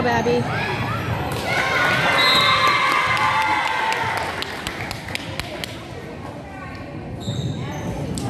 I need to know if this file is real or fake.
real